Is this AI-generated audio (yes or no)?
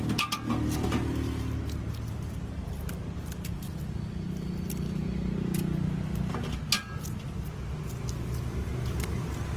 no